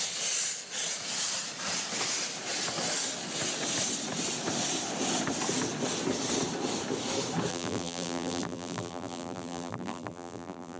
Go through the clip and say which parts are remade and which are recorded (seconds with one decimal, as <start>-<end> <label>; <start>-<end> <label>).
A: 0.0-7.5 recorded; 7.5-10.8 remade